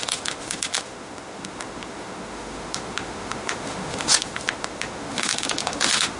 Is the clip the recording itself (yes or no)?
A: no